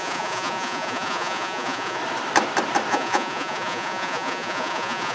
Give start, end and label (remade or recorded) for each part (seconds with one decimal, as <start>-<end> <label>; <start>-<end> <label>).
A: 0.0-2.0 remade; 2.0-2.9 recorded; 2.9-5.1 remade